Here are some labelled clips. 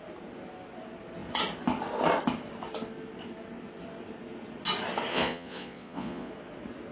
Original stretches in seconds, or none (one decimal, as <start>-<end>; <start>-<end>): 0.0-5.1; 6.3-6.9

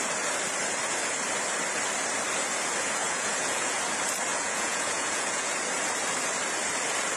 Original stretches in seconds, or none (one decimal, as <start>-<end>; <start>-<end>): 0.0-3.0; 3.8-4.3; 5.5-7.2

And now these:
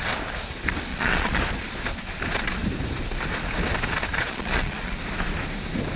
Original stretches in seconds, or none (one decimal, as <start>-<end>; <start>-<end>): 0.0-0.9; 1.4-4.1; 5.0-6.0

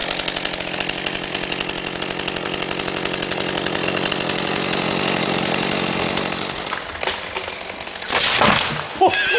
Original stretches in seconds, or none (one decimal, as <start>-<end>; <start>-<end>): 0.0-9.4

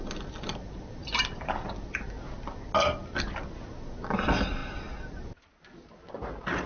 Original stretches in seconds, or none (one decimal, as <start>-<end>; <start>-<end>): 0.0-6.7